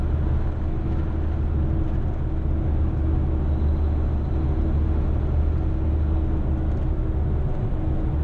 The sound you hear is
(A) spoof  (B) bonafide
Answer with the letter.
B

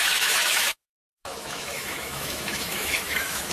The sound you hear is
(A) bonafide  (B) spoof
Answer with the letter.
B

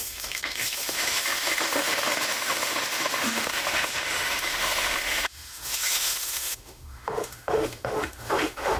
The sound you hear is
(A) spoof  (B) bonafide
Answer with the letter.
A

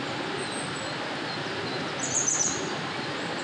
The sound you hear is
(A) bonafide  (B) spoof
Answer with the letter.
A